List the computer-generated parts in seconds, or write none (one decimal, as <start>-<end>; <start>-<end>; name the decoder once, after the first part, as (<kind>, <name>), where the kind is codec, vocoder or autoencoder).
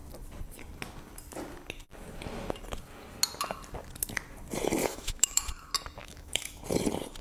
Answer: 4.8-5.4 (autoencoder, DAC-VAE); 6.0-6.6